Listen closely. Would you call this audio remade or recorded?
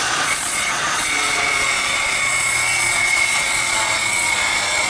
remade